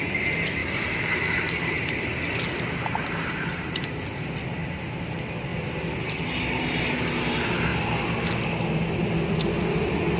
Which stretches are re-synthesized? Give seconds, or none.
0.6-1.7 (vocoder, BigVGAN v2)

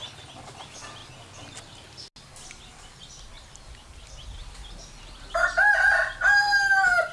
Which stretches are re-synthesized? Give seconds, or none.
none

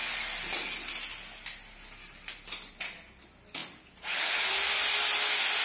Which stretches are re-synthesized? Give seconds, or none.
none

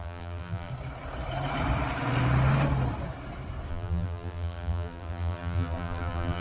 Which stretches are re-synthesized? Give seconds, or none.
0.0-0.7 (vocoder, BigVGAN v2); 3.7-6.4

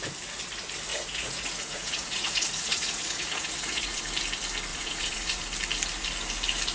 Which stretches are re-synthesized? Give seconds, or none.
0.9-4.0 (vocoder, Vocos); 4.7-5.4

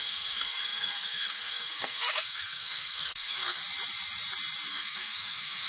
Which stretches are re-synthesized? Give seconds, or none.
0.0-3.6 (codec, SNAC); 4.7-5.7